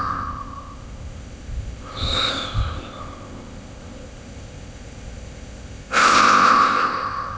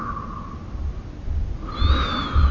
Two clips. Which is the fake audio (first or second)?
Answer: first